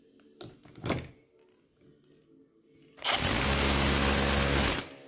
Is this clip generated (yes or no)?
no